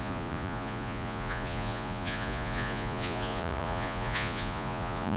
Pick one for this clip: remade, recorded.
remade